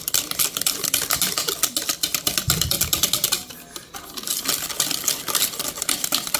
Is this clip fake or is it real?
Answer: real